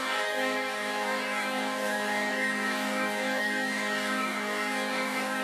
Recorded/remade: remade